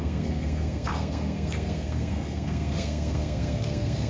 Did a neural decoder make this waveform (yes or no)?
yes